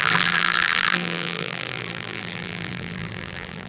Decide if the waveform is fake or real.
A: fake